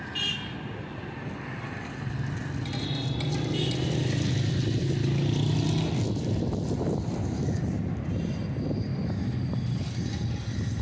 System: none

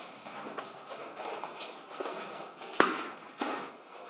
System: codec, SNAC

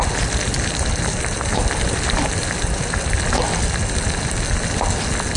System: none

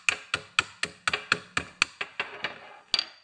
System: none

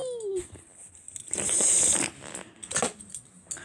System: none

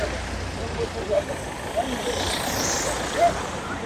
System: none